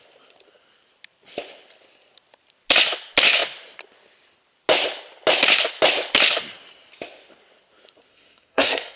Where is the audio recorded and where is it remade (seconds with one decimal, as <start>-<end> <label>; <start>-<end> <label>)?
0.0-8.1 recorded; 8.1-9.0 remade